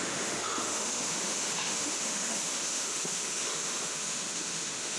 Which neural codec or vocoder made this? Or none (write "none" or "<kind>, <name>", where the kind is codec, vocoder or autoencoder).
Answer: autoencoder, DAC-VAE